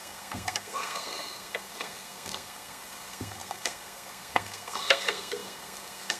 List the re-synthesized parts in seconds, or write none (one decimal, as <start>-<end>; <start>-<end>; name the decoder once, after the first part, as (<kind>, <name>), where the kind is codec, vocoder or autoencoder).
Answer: 0.0-6.2 (codec, SNAC)